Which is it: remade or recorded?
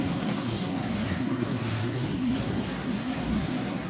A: remade